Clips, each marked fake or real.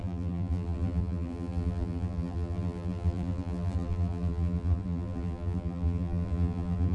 fake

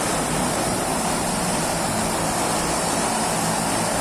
real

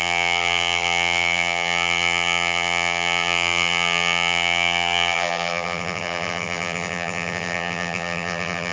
fake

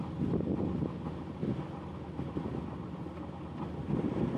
real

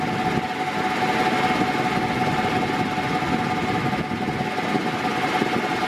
real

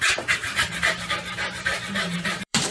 fake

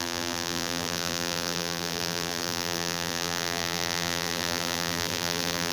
fake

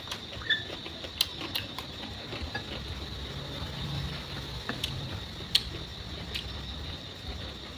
real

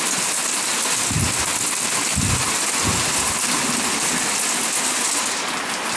real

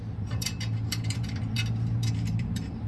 fake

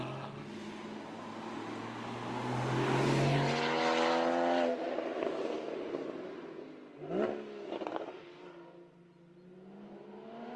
real